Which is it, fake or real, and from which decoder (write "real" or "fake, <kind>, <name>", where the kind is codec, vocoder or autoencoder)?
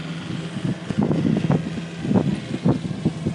real